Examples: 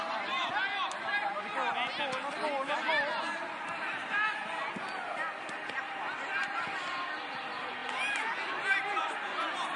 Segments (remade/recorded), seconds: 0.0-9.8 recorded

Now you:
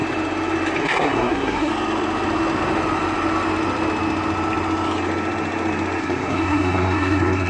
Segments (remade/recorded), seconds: 0.0-0.8 recorded; 0.8-1.7 remade; 1.7-6.0 recorded; 6.0-7.5 remade

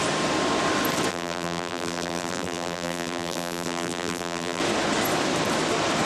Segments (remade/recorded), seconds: 0.0-1.1 recorded; 1.1-4.6 remade; 4.6-6.0 recorded

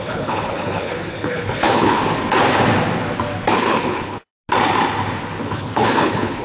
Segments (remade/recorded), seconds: 0.0-2.0 remade; 2.0-3.5 recorded; 3.5-4.3 remade; 4.3-5.4 recorded; 5.4-6.4 remade

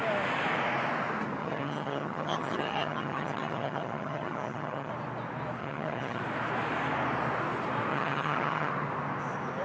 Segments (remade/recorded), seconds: 0.0-1.4 recorded; 1.4-4.9 remade; 4.9-5.6 recorded; 5.6-6.2 remade; 6.2-7.9 recorded; 7.9-8.7 remade; 8.7-9.6 recorded

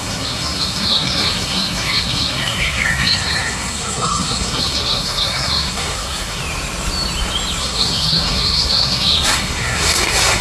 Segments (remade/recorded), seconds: 0.0-6.4 remade; 6.4-7.6 recorded; 7.6-10.4 remade

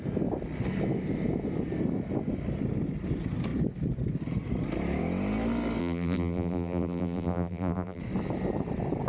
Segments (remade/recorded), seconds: 0.0-5.8 recorded; 5.8-8.0 remade; 8.0-9.1 recorded

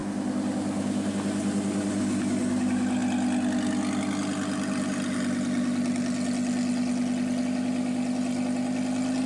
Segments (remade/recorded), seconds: 0.0-9.3 recorded